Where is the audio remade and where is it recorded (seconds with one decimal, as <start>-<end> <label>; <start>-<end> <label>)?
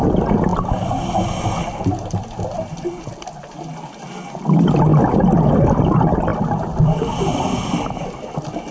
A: 0.0-8.7 recorded